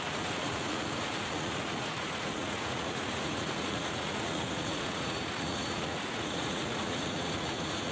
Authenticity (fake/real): fake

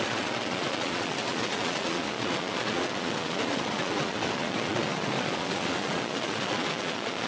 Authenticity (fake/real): fake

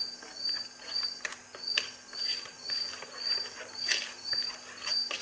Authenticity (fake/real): real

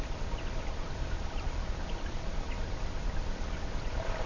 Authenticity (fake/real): real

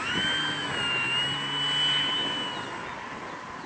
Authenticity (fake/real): real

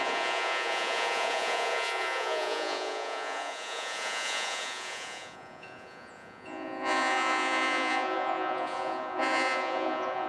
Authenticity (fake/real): fake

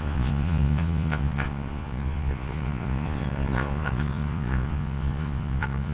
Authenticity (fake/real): fake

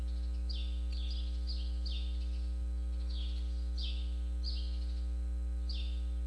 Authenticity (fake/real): real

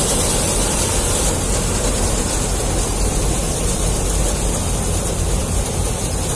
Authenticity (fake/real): real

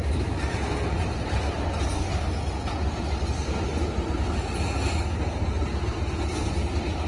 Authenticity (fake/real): real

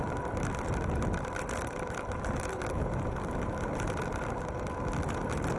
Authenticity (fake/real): real